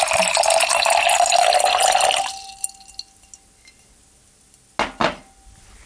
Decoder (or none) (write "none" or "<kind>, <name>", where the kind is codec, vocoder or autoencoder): none